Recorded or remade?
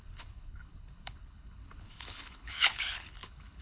remade